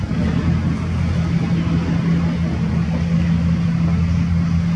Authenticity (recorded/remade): recorded